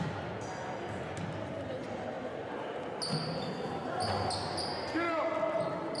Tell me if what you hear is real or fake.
real